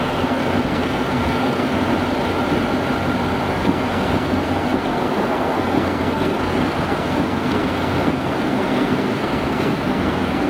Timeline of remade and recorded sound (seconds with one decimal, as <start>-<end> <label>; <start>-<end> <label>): 0.0-1.9 remade; 1.9-3.5 recorded; 3.5-10.5 remade